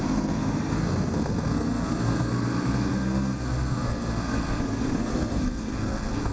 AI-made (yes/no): yes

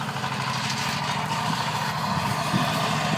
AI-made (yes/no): no